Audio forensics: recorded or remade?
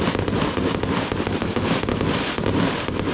recorded